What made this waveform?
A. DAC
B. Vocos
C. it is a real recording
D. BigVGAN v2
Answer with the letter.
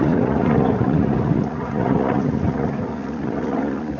B